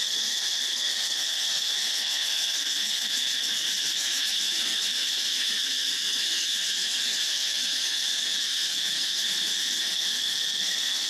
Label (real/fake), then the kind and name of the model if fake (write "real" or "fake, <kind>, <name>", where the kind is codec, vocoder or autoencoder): fake, codec, SNAC